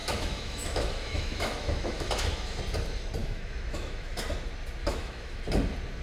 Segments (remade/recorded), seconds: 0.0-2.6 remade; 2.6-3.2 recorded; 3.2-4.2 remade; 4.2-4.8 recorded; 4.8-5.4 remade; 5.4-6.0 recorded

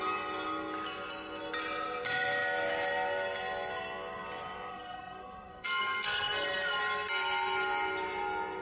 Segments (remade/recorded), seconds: 0.0-4.7 recorded; 4.7-6.8 remade; 6.8-8.6 recorded

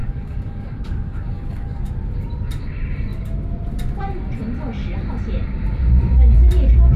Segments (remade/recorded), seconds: 0.0-1.9 remade; 1.9-7.0 recorded

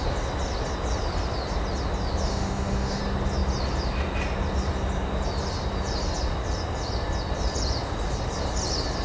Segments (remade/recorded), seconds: 0.0-2.3 recorded; 2.3-3.0 remade; 3.0-9.0 recorded

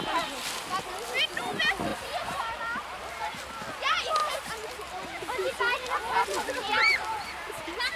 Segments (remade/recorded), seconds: 0.0-1.9 recorded; 1.9-3.4 remade; 3.4-4.2 recorded; 4.2-7.5 remade; 7.5-8.0 recorded

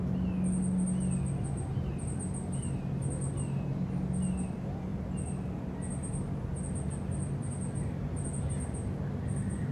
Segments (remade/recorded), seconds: 0.0-9.7 recorded